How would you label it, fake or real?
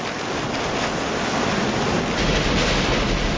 real